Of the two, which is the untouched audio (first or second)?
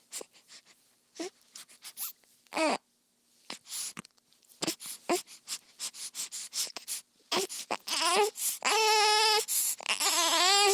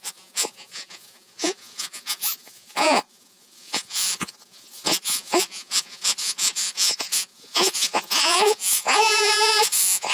first